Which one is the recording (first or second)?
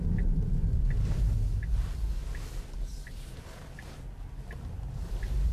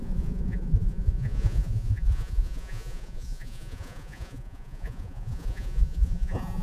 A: first